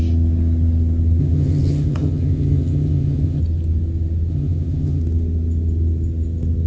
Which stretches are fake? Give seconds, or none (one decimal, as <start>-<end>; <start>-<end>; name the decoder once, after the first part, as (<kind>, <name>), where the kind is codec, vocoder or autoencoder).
1.2-3.4 (vocoder, HiFi-GAN); 4.3-5.0